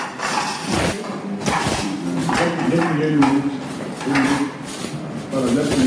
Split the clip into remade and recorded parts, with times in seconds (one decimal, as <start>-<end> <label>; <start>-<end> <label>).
0.0-2.2 recorded; 2.2-4.6 remade; 4.6-5.9 recorded